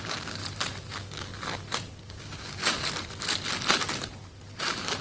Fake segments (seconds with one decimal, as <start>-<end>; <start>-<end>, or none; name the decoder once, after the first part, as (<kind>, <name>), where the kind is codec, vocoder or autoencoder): 0.0-0.4 (codec, DAC); 0.9-1.3; 2.0-2.6